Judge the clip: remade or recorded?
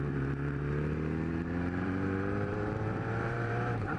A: remade